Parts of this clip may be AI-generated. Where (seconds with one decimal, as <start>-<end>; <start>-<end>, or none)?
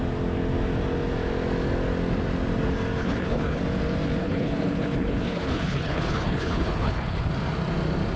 3.0-3.6; 4.2-7.3